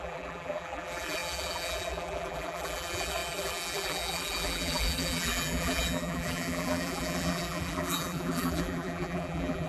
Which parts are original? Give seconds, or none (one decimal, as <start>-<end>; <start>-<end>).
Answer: none